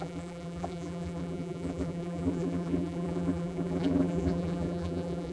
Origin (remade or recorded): remade